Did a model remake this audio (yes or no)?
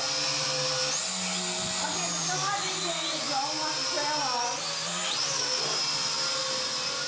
no